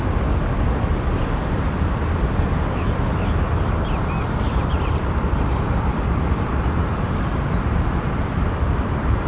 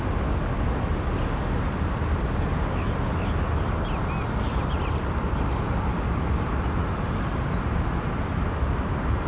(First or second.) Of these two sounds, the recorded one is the second